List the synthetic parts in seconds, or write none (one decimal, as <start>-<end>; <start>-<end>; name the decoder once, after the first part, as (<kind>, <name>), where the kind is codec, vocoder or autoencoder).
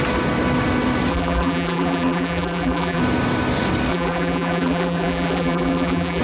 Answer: 1.1-3.0 (vocoder, BigVGAN v2); 3.9-6.2